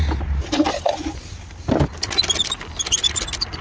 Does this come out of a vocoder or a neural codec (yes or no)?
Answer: no